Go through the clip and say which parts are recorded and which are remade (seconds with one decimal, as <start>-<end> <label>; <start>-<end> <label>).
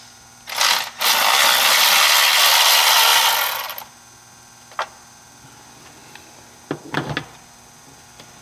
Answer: 0.0-8.4 recorded